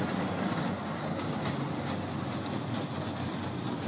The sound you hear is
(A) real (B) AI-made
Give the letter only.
A